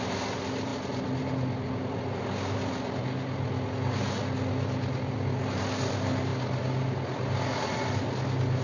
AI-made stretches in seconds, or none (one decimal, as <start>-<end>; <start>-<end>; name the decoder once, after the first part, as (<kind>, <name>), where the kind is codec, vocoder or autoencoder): none